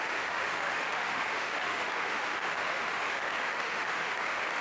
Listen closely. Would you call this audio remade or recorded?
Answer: remade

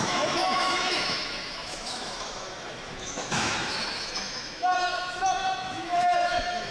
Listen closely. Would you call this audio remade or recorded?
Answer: remade